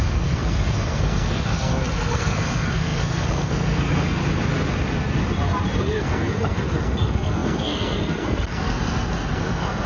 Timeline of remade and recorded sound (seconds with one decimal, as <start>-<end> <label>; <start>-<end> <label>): 0.0-4.2 remade; 4.2-5.8 recorded; 5.8-9.9 remade

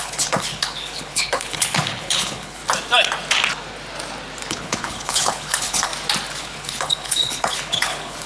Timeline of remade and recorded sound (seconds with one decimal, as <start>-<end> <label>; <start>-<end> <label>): 0.0-2.6 remade; 2.6-4.5 recorded; 4.5-5.9 remade; 5.9-6.4 recorded; 6.4-8.3 remade

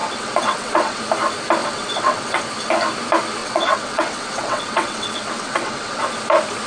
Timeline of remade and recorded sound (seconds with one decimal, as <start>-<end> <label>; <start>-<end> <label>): 0.0-1.0 remade; 1.0-1.6 recorded; 1.6-2.4 remade; 2.4-3.4 recorded; 3.4-6.0 remade; 6.0-6.7 recorded